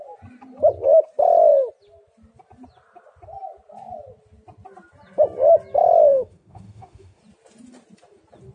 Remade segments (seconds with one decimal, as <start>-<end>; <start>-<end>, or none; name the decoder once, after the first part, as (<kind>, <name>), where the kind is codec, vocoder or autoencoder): 6.1-7.2 (autoencoder, DAC-VAE)